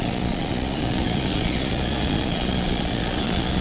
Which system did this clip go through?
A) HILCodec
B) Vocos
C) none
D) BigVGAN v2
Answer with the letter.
B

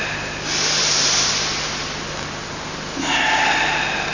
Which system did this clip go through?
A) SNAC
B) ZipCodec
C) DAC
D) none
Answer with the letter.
D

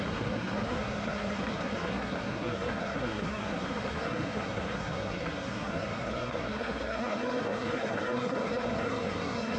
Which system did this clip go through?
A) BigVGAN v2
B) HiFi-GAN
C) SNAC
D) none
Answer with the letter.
C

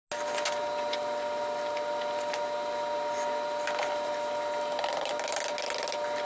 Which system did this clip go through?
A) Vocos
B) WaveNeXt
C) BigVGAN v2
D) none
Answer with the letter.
D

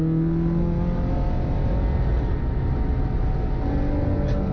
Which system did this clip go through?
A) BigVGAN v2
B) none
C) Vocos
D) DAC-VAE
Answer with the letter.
B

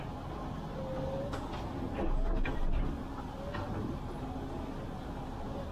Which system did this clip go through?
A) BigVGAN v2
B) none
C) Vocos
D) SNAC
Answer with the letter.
B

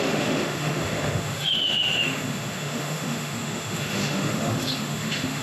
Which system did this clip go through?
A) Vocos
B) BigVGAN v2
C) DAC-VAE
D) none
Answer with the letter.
C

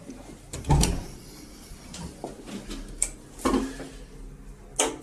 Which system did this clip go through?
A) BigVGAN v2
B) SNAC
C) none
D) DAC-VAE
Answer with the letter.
C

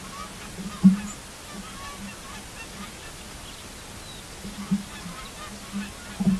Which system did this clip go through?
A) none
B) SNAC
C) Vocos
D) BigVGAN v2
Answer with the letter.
A